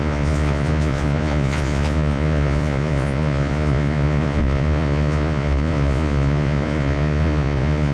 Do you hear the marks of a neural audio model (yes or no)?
yes